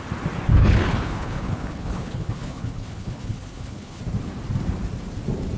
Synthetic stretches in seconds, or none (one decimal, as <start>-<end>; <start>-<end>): 0.6-4.0